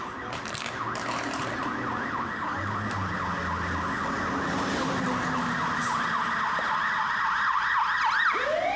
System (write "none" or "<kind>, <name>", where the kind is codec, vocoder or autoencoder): none